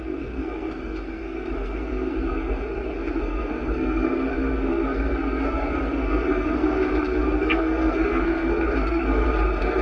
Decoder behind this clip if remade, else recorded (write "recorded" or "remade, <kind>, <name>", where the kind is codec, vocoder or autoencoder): remade, codec, SNAC